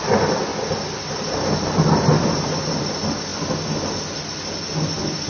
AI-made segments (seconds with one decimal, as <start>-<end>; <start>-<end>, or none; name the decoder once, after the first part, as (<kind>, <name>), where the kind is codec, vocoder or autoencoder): none